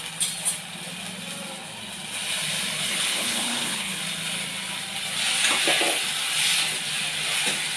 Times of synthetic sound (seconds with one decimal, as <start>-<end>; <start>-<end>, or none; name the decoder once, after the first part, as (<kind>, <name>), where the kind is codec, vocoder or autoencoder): 2.9-4.0 (codec, HILCodec)